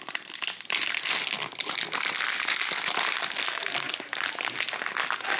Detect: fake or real real